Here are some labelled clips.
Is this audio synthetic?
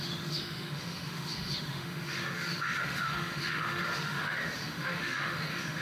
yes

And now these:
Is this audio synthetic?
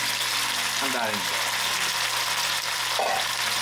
no